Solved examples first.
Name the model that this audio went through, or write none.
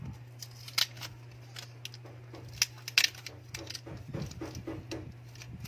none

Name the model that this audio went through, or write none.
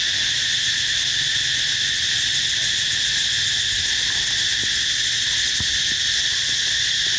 none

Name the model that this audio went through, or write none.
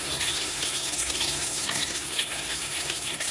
codec, SNAC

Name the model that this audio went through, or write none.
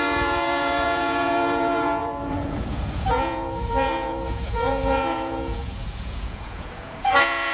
vocoder, Vocos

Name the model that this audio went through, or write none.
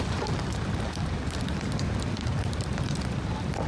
vocoder, BigVGAN v2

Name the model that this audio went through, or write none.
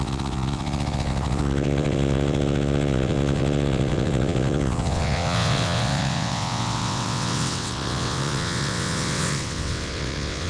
vocoder, WaveNeXt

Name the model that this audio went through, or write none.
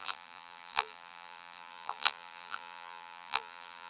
vocoder, BigVGAN v2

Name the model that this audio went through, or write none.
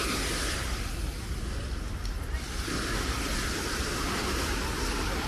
none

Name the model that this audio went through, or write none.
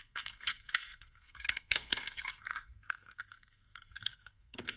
codec, SNAC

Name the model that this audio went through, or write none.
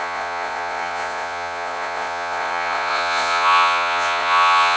vocoder, Vocos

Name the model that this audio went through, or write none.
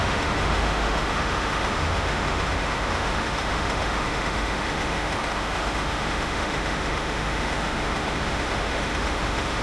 autoencoder, DAC-VAE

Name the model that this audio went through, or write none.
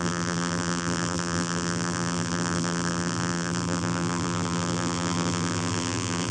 vocoder, BigVGAN v2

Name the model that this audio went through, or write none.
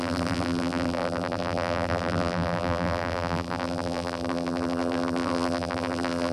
vocoder, BigVGAN v2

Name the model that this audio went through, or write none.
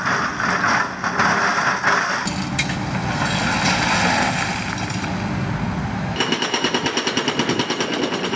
none